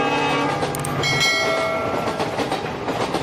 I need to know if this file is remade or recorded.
recorded